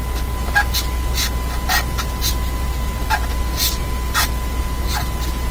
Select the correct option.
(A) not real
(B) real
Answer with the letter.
B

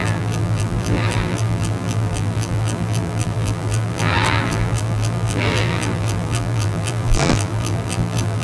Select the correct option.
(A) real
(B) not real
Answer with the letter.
B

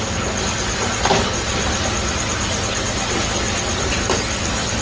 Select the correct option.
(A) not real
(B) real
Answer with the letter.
B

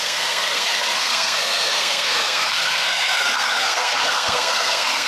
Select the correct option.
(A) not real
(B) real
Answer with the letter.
A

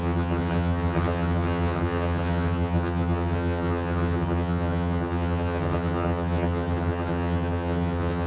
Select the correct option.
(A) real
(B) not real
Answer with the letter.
B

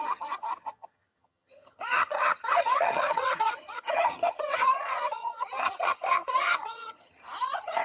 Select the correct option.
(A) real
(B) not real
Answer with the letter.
B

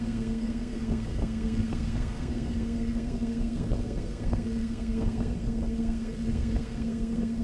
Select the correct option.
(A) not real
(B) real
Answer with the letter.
A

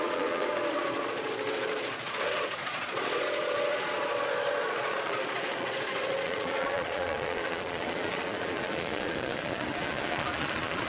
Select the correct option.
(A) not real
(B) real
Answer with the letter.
A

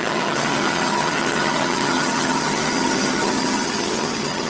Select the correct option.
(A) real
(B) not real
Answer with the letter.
B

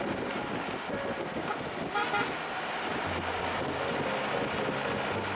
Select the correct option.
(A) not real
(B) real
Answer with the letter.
B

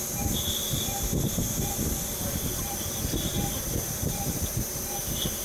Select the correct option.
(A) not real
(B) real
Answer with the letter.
B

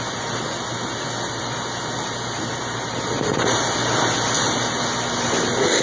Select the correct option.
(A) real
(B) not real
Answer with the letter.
A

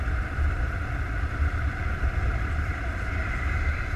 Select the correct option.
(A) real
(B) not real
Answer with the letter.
B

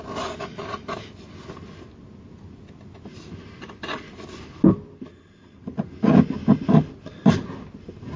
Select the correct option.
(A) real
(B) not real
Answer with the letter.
A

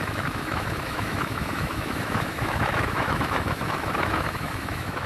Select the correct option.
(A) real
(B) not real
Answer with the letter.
B